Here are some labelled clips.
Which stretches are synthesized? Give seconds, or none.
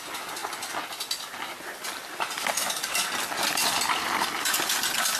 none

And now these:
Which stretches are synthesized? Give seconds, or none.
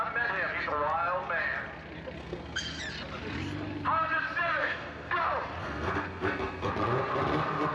2.2-2.8; 4.6-5.1; 5.6-6.7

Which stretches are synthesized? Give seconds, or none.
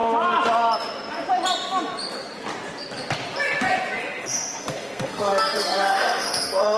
4.0-6.8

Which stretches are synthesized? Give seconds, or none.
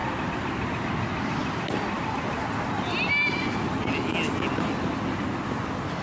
none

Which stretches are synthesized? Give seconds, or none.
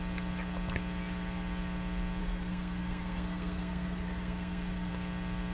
2.2-4.9